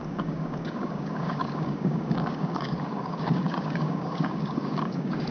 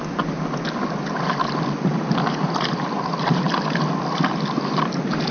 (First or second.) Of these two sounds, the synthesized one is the first